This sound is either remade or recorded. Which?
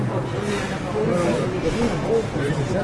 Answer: recorded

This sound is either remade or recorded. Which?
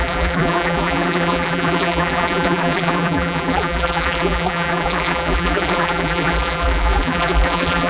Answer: remade